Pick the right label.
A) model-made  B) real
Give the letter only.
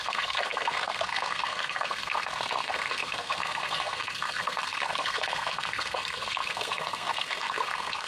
A